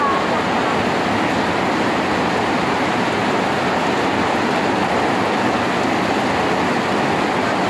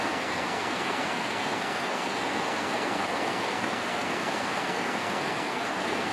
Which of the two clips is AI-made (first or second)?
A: second